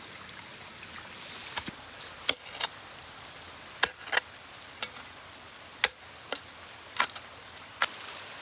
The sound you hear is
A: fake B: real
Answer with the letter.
B